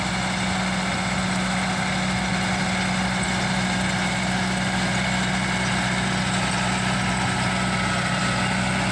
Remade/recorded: recorded